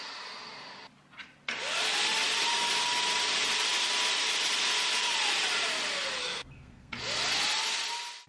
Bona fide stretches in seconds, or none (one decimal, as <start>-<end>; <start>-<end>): 0.0-6.2; 6.9-8.3